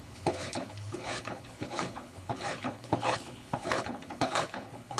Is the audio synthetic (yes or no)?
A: yes